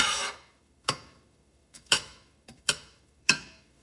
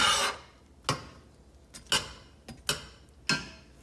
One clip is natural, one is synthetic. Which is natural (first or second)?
second